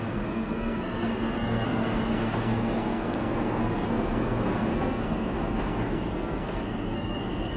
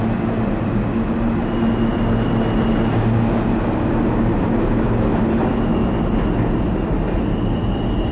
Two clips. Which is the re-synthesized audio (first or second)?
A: first